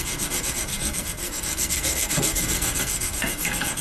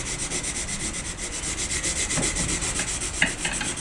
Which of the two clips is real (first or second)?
second